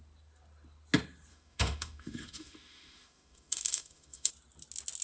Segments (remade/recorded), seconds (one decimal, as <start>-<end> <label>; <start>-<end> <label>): 0.0-1.3 recorded; 1.3-4.3 remade; 4.3-5.0 recorded